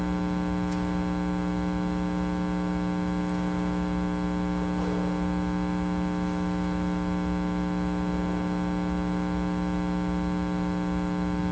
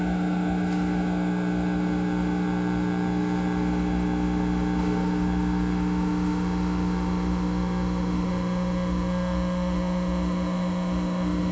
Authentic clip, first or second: first